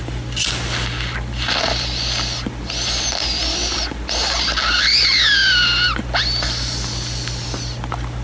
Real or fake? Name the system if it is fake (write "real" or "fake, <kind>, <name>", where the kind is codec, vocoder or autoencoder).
real